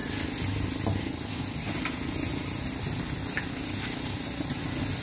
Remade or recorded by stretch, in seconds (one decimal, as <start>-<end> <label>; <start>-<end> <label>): 0.0-5.0 recorded